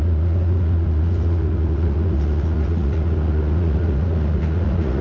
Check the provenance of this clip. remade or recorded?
remade